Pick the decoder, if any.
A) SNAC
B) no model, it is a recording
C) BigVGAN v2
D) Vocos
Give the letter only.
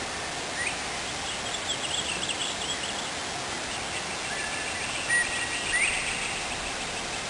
B